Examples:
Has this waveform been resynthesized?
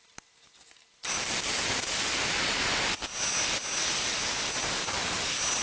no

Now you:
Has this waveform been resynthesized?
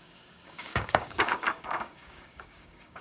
yes